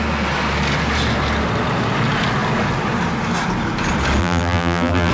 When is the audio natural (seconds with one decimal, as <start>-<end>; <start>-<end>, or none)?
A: 0.0-4.2